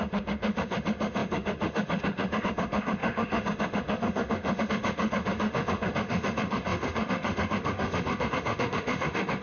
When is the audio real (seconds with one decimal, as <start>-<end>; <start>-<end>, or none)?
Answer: none